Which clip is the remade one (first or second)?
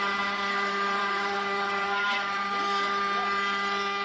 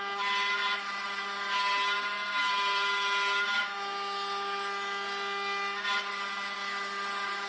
first